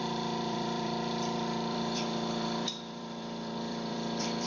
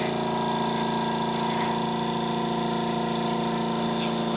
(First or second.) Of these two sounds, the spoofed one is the first